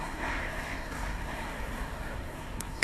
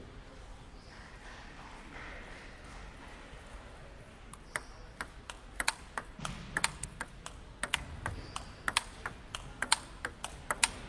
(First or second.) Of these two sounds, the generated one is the first